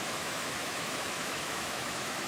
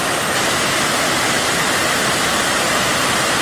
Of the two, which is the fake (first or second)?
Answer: first